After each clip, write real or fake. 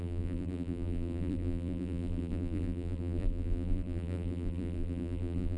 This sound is fake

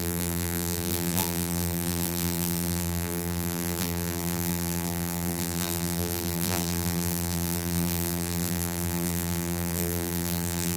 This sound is fake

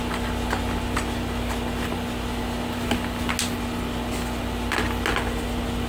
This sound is real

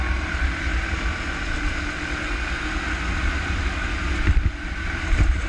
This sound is real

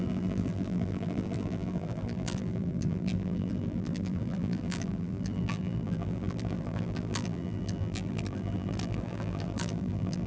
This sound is fake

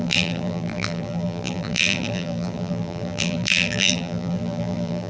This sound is fake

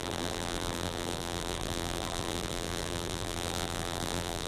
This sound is fake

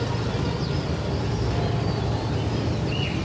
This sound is real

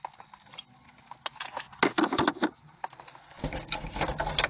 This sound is real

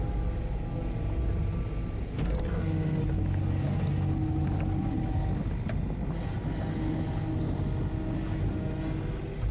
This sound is real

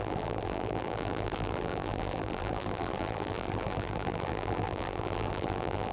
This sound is fake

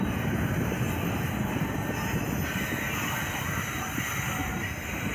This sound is real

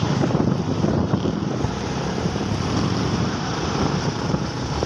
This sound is fake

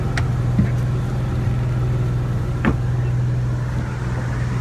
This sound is real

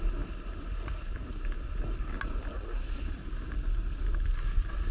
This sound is real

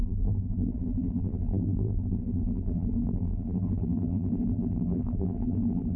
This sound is fake